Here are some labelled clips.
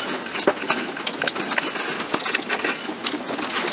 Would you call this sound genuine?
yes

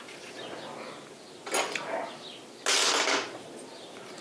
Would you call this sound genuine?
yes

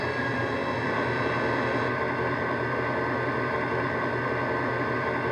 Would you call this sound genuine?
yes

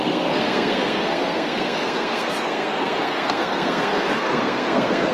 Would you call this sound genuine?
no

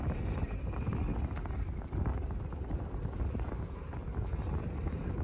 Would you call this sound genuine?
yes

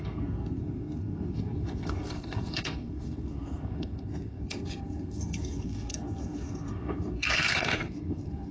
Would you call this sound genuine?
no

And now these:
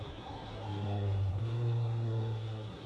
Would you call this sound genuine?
no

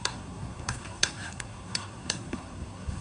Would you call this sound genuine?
no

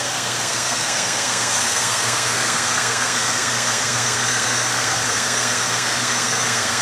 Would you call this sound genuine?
no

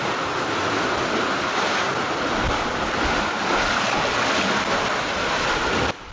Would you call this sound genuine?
yes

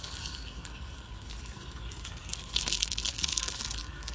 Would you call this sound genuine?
no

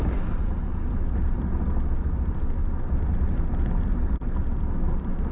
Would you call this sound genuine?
yes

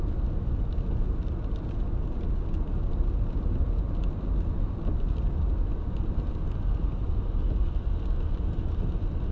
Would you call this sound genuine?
yes